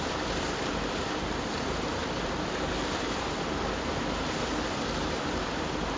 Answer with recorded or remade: remade